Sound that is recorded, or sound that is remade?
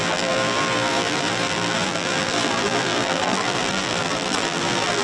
remade